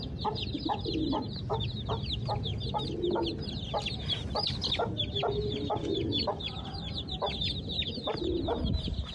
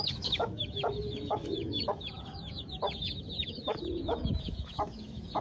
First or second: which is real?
first